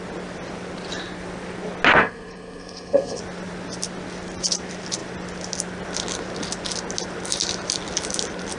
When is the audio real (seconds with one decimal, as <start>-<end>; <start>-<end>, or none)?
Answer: 0.0-2.0; 3.2-8.6